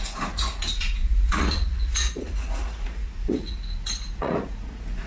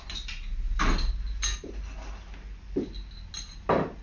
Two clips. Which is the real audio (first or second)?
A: second